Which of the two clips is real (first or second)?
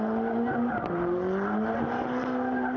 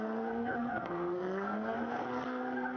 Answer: first